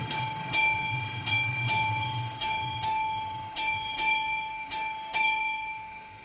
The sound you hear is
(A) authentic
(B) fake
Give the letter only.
B